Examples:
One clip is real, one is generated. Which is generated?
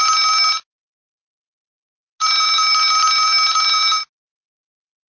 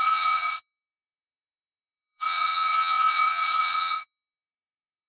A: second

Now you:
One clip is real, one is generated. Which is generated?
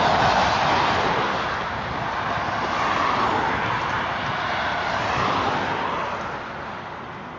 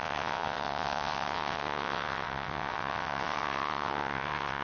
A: second